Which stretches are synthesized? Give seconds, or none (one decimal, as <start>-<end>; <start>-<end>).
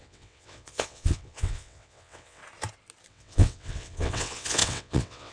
0.0-2.4; 3.1-5.3